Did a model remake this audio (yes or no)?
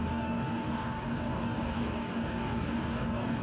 yes